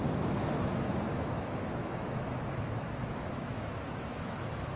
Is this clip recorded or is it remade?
remade